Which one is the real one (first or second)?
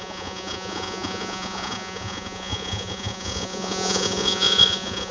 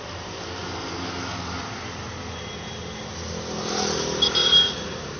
second